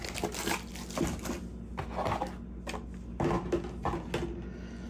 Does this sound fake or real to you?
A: real